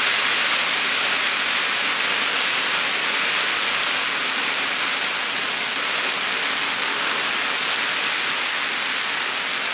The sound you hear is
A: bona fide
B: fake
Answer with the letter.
A